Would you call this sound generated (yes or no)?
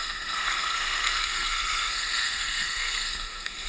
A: yes